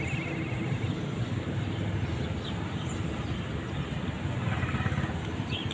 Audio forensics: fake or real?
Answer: real